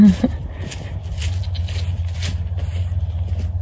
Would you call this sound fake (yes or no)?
no